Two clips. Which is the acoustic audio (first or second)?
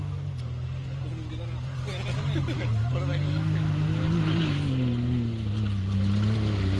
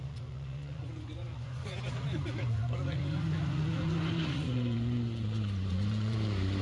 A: first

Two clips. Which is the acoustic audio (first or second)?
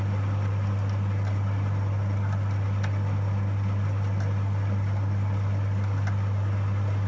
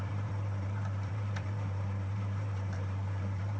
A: first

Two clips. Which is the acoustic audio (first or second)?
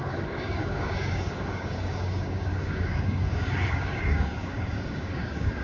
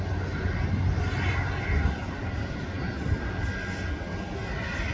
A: second